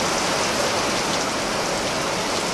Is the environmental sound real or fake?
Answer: real